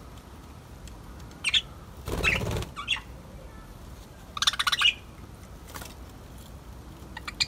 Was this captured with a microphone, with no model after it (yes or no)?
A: yes